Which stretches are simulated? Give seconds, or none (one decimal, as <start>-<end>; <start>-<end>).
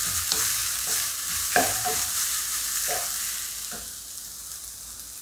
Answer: 0.6-2.6